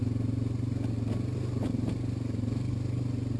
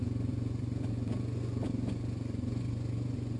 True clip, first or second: first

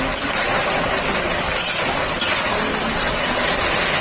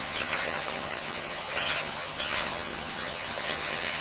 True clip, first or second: first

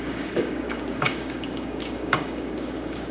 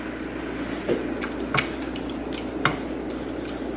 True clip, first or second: second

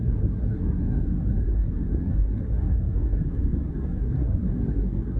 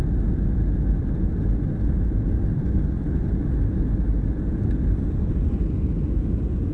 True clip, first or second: second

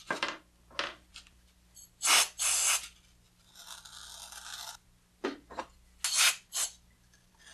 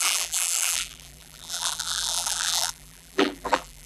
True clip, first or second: first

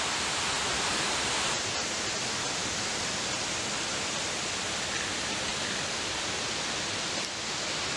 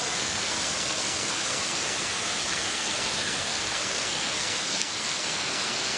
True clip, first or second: first